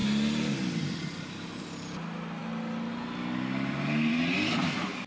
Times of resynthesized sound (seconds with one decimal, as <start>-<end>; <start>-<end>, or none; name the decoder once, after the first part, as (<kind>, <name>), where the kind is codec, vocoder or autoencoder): none

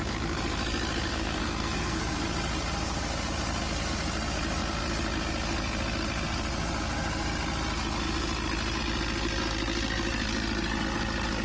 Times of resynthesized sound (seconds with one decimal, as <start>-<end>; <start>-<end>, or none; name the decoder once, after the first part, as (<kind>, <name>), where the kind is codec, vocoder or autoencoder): 1.1-2.0 (codec, SNAC)

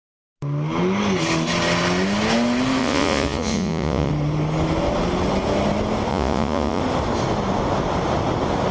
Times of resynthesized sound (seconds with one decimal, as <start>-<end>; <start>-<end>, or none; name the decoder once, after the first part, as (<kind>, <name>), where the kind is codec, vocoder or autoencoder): 2.8-4.1 (vocoder, Vocos); 6.1-6.8

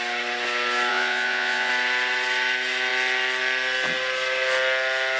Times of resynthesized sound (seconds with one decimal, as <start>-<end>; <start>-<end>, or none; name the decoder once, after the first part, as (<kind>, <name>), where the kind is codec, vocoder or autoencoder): 0.9-1.7 (vocoder, Vocos)

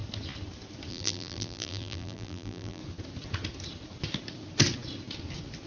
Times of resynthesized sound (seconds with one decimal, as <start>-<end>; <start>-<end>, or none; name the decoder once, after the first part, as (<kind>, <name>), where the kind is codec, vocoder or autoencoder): 0.9-2.8 (vocoder, BigVGAN v2)